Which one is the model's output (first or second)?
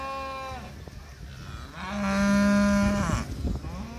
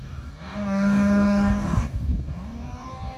second